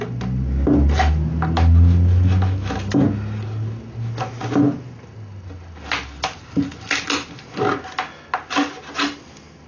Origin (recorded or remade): recorded